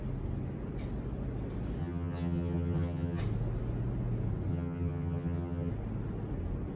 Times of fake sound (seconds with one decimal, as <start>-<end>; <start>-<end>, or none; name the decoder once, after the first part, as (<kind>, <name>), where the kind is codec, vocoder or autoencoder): 1.8-3.2 (vocoder, HiFi-GAN); 4.5-5.7